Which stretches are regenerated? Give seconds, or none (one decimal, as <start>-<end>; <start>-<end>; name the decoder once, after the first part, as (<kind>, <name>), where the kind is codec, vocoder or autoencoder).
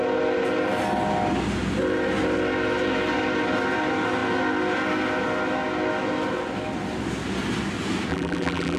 8.1-8.8 (vocoder, BigVGAN v2)